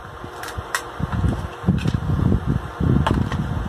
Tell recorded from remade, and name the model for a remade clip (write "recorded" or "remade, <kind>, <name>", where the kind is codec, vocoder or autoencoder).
recorded